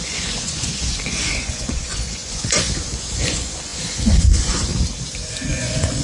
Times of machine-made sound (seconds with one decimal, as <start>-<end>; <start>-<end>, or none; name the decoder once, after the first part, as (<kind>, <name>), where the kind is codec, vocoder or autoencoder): 0.0-4.7 (vocoder, Vocos); 5.5-6.0